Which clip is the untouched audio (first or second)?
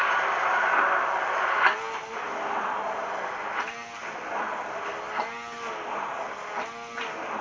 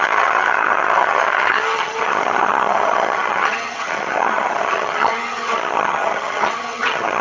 first